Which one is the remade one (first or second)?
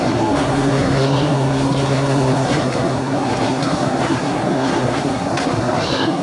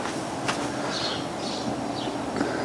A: first